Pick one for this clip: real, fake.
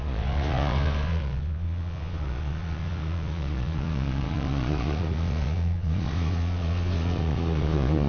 fake